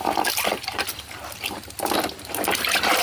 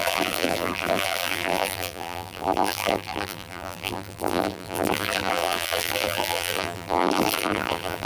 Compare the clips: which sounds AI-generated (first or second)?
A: second